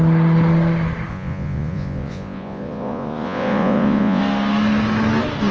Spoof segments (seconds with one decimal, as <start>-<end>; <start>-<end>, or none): 1.1-4.2